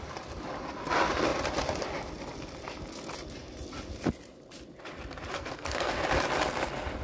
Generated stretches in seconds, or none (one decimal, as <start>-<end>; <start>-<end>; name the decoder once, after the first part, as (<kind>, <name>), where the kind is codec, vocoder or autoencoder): 5.3-5.9 (codec, SNAC)